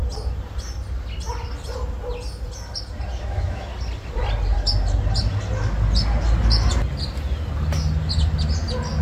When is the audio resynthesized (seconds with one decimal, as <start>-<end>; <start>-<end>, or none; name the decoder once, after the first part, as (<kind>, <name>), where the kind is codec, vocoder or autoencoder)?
3.2-3.7 (autoencoder, DAC-VAE)